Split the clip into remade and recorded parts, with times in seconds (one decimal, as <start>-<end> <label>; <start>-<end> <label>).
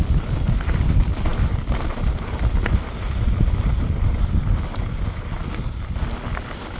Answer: 0.0-6.8 recorded